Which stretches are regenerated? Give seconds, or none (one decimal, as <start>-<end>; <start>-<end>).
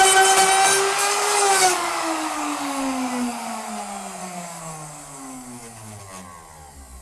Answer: 1.0-3.7; 4.2-6.0